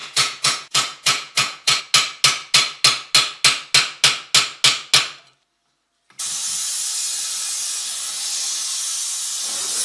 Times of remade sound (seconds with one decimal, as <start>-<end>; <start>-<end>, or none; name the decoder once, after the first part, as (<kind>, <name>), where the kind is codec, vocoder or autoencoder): 0.0-1.8 (vocoder, Vocos)